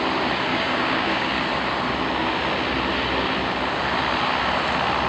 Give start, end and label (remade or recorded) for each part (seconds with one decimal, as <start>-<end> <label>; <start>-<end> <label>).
0.0-0.5 recorded; 0.5-1.3 remade; 1.3-5.1 recorded